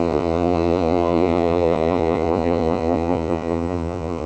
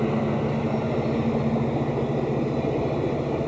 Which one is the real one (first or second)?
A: second